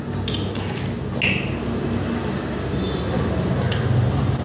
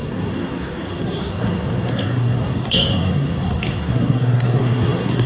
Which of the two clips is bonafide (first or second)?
first